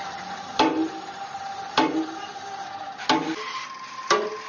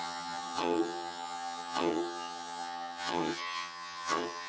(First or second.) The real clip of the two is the first